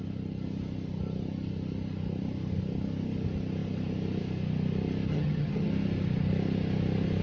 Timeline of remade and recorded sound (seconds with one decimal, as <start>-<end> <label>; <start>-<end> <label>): 0.0-5.1 recorded; 5.1-5.7 remade; 5.7-7.2 recorded